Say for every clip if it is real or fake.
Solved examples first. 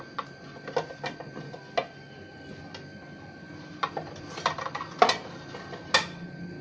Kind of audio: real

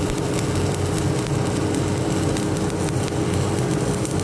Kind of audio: real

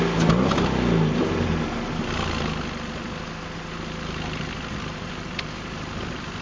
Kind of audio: real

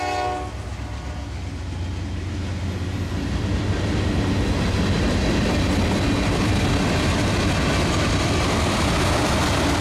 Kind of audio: real